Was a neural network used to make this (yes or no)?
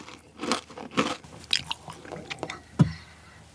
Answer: no